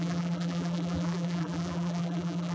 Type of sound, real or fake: fake